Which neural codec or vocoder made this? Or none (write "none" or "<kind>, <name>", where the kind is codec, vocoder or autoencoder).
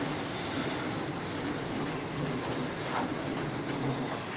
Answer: none